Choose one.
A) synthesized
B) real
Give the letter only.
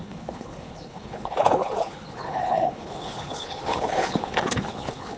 A